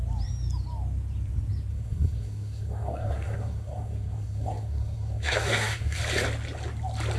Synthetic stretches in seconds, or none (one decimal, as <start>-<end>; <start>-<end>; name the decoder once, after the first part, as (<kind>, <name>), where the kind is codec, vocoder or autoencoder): 1.7-6.0 (codec, SNAC)